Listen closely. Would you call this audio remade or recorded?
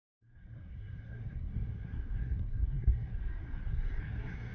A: remade